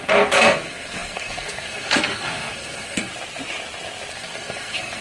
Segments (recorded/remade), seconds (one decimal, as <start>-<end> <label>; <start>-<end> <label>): 0.0-3.1 remade; 3.1-4.1 recorded; 4.1-5.0 remade